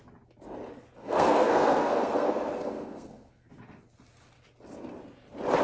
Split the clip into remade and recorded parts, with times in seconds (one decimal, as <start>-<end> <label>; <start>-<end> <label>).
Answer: 0.0-1.0 recorded; 1.0-3.5 remade; 3.5-5.6 recorded

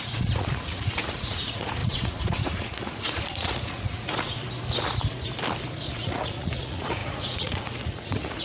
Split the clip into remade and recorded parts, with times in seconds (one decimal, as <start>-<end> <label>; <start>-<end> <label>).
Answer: 0.0-4.4 remade; 4.4-5.9 recorded; 5.9-8.4 remade

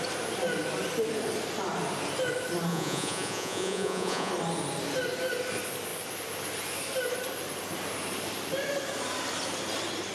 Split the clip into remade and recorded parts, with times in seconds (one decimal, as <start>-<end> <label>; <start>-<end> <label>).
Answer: 0.0-2.7 recorded; 2.7-4.3 remade; 4.3-10.1 recorded